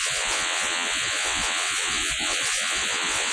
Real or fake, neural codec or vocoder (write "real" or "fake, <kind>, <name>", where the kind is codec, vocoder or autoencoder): fake, vocoder, WaveNeXt